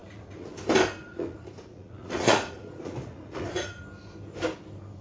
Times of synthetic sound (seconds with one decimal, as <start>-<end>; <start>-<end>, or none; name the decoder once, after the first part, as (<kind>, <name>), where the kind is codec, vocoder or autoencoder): 0.0-0.6 (vocoder, Vocos); 1.0-3.8

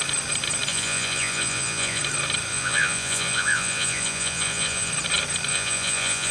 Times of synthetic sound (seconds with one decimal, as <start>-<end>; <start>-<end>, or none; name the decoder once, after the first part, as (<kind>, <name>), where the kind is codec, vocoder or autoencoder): 0.7-2.0 (vocoder, Vocos); 2.5-4.9; 5.5-6.3

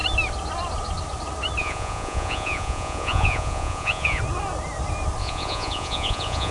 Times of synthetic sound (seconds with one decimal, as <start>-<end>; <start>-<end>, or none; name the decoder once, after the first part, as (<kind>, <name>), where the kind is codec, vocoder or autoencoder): 1.6-4.2 (vocoder, Vocos); 5.2-6.5

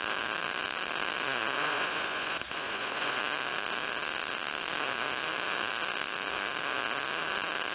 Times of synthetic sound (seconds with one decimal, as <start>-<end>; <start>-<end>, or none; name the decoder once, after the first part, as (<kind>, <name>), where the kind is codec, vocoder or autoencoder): 1.6-3.2 (vocoder, Vocos)

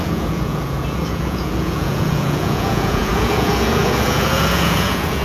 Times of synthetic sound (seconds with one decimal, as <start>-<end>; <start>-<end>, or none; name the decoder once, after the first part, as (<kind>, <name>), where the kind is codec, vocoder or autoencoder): 0.0-5.2 (vocoder, Vocos)

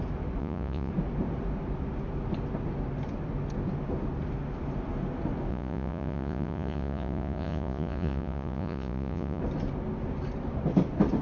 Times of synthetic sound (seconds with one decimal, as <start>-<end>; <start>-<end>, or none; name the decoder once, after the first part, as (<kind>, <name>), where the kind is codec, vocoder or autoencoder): 0.4-0.9 (vocoder, Vocos); 5.5-9.4